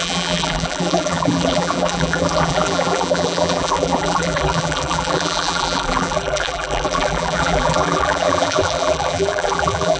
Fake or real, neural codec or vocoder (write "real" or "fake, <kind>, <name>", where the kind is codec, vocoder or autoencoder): fake, vocoder, BigVGAN v2